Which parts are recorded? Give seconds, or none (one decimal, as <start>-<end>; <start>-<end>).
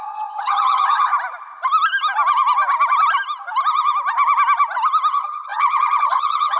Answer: 1.1-5.1